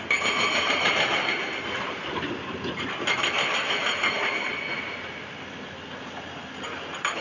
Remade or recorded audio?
recorded